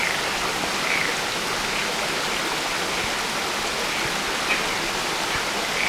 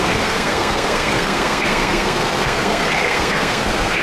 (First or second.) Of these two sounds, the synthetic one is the second